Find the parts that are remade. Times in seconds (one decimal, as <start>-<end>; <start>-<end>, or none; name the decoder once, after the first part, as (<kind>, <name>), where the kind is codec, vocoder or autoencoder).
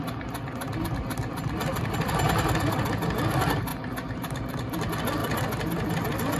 none